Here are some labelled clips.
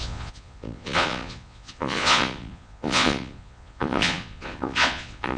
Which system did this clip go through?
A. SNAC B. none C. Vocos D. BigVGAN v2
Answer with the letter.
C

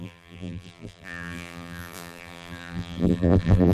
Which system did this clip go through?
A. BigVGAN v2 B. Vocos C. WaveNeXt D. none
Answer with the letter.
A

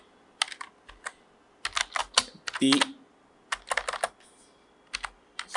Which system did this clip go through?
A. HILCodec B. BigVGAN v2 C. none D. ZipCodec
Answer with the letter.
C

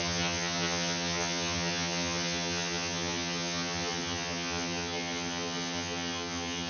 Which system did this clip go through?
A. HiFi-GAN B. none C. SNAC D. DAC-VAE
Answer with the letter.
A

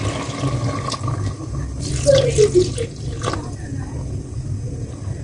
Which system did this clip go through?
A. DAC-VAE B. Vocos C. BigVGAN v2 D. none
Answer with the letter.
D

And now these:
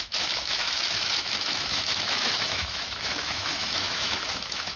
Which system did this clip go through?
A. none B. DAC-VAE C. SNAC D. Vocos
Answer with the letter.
B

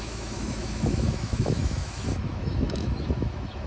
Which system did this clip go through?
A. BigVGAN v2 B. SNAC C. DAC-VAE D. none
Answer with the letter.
C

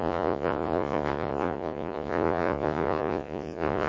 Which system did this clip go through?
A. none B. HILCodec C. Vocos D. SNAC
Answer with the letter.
C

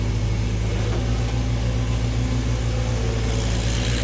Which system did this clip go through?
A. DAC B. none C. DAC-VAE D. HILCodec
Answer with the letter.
B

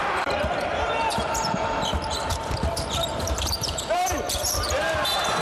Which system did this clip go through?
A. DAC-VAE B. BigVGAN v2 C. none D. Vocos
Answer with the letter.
B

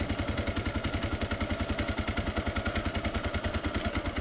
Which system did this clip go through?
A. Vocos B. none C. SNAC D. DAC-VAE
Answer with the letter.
B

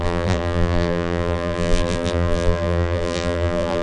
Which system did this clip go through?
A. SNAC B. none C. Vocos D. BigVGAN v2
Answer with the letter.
D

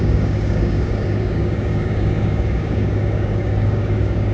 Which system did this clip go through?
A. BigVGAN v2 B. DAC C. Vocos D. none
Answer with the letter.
B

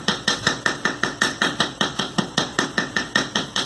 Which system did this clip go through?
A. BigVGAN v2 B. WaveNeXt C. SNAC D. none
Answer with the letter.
B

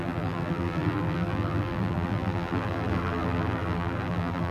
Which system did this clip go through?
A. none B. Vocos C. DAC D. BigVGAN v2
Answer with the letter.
D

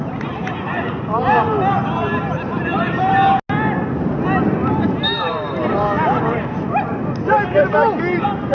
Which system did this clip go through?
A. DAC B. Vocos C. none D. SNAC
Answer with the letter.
C